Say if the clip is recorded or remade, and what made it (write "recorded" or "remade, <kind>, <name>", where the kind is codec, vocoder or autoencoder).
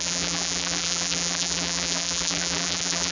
remade, vocoder, BigVGAN v2